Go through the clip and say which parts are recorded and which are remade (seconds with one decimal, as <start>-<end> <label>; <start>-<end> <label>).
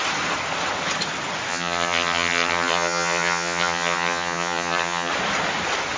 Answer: 0.0-1.5 recorded; 1.5-5.1 remade; 5.1-6.0 recorded